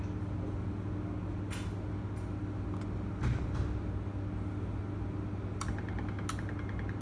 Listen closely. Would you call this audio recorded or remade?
recorded